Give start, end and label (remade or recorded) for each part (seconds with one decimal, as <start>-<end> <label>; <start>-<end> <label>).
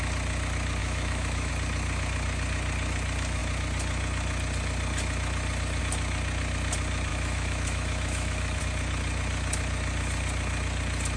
0.0-0.8 recorded; 0.8-1.5 remade; 1.5-7.1 recorded; 7.1-8.6 remade; 8.6-11.2 recorded